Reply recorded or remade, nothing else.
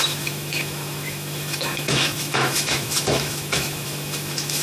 remade